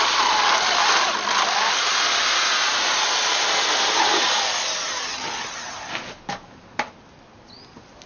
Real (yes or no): yes